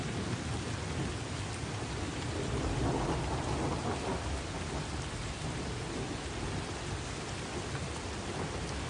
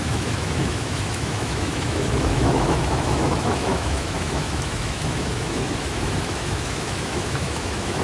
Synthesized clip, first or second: second